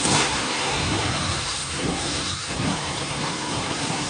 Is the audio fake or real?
fake